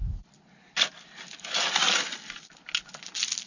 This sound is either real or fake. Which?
real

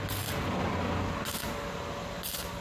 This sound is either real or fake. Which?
real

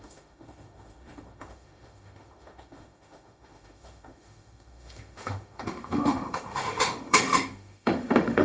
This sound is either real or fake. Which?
fake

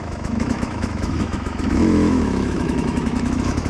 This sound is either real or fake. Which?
fake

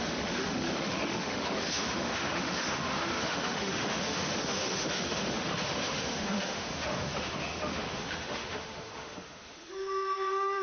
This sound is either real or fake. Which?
fake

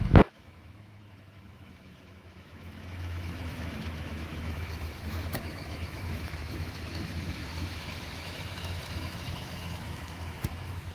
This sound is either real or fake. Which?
fake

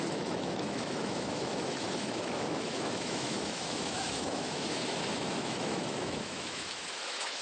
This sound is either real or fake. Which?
fake